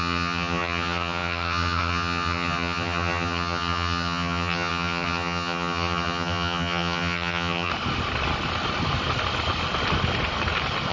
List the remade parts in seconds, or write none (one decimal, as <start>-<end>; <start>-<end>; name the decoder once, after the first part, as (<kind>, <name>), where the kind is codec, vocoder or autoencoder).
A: 0.0-7.7 (vocoder, HiFi-GAN)